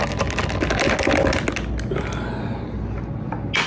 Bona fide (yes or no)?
yes